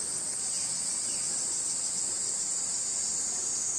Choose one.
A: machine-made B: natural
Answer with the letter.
B